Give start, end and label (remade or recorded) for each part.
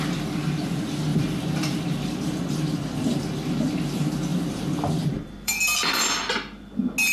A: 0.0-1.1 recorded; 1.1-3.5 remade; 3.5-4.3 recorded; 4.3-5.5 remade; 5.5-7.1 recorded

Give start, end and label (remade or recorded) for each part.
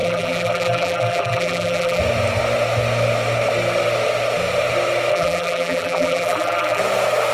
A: 0.0-2.0 remade; 2.0-5.1 recorded; 5.1-6.8 remade; 6.8-7.3 recorded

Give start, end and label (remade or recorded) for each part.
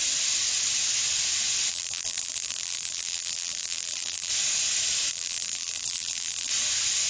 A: 0.0-1.7 recorded; 1.7-4.3 remade; 4.3-5.1 recorded; 5.1-6.5 remade; 6.5-7.1 recorded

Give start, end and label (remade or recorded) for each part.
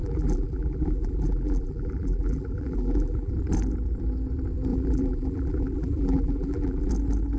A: 0.0-3.3 remade; 3.3-4.7 recorded; 4.7-6.9 remade; 6.9-7.4 recorded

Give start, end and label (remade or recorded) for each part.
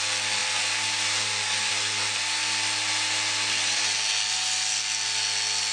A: 0.0-5.7 recorded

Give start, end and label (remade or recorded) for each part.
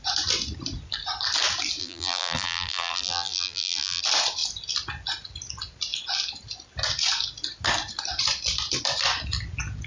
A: 0.0-1.8 recorded; 1.8-4.0 remade; 4.0-9.9 recorded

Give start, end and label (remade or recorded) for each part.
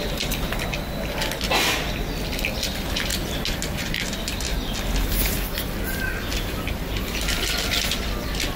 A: 0.0-8.6 recorded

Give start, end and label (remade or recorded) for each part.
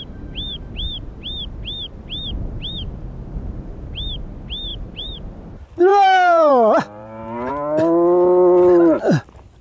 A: 0.0-4.7 recorded; 4.7-5.3 remade; 5.3-5.9 recorded; 5.9-7.5 remade; 7.5-9.6 recorded